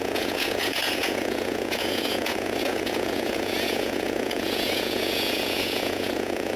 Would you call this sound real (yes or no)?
no